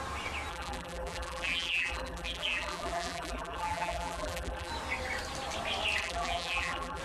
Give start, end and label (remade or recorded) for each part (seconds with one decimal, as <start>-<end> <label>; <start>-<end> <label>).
0.0-0.5 recorded; 0.5-4.7 remade; 4.7-6.0 recorded; 6.0-7.0 remade